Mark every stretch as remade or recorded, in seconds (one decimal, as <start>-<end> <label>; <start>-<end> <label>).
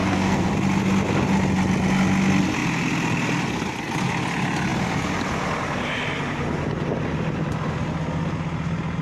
0.0-0.5 remade; 0.5-9.0 recorded